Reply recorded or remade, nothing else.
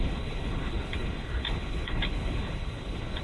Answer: remade